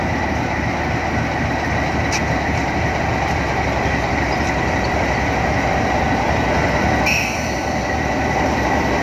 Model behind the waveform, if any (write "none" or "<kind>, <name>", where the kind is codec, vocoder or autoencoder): none